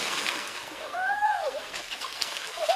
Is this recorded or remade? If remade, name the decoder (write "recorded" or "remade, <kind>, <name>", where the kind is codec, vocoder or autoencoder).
remade, codec, SNAC